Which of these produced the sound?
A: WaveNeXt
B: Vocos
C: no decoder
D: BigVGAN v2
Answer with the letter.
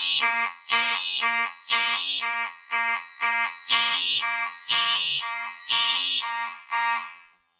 D